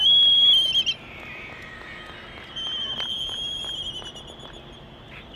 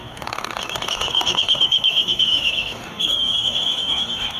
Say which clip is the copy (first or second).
second